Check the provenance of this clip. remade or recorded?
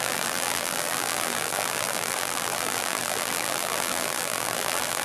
remade